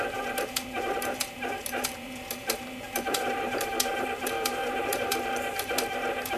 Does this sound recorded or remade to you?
remade